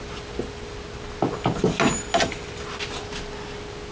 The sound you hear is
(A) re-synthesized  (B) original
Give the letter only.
B